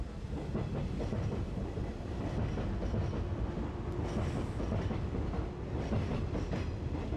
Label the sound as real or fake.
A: real